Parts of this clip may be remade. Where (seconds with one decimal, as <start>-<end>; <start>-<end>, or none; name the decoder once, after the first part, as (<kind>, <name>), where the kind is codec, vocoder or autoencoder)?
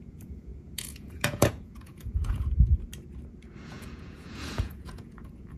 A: 0.0-2.7 (vocoder, Vocos); 3.6-5.6